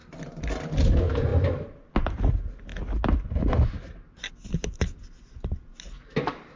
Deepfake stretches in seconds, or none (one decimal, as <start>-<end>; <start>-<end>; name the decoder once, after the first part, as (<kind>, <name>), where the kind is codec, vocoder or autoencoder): none